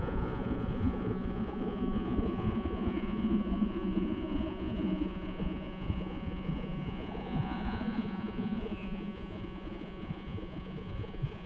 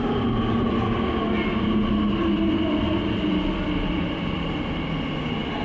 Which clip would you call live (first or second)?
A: second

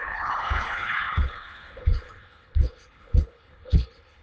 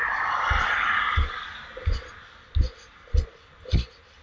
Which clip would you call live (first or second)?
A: second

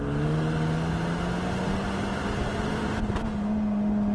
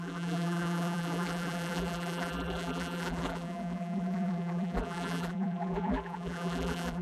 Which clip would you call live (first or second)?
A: first